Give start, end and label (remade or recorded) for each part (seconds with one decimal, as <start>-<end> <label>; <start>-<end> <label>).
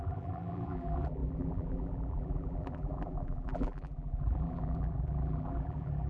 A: 0.0-6.1 remade